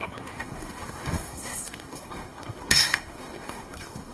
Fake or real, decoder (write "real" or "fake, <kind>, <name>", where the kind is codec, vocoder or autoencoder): fake, codec, SNAC